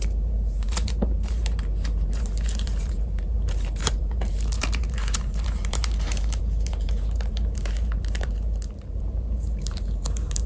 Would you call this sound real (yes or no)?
no